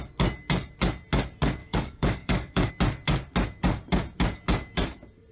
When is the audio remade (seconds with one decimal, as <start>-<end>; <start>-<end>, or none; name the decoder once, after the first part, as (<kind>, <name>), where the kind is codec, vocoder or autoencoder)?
1.6-2.7 (codec, DAC)